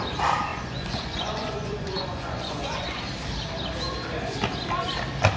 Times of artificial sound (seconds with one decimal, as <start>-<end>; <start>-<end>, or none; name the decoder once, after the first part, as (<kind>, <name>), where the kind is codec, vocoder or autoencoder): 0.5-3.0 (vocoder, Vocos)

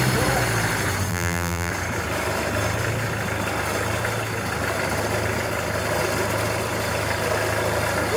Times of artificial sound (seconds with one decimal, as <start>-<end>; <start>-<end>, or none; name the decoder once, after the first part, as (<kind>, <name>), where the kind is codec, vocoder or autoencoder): 1.1-1.7 (vocoder, BigVGAN v2)

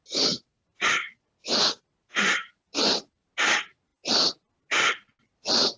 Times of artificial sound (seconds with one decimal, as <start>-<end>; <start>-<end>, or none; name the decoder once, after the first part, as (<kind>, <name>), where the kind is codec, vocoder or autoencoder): none

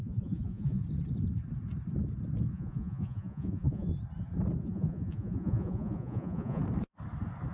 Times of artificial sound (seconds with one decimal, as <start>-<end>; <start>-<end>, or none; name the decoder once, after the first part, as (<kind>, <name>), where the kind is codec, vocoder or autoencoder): 0.0-0.8 (vocoder, Vocos); 2.5-3.9; 4.6-6.6

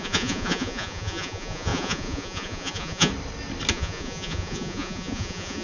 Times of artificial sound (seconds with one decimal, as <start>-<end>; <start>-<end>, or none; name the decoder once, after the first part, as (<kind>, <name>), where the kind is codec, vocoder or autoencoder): 0.0-3.1 (vocoder, Vocos); 3.7-5.6

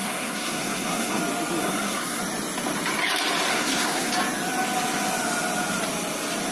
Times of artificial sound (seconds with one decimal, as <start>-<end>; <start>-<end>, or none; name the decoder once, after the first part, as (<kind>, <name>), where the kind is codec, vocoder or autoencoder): 0.0-1.2 (codec, SNAC); 1.6-2.2; 3.5-4.1